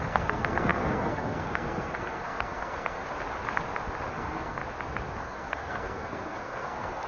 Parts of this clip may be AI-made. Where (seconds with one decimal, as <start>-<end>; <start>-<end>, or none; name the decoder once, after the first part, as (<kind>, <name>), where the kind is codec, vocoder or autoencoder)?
0.0-3.0 (codec, SNAC); 4.1-4.6; 5.2-7.1